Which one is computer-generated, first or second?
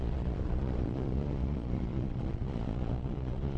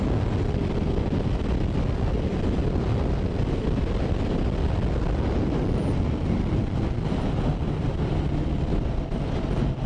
first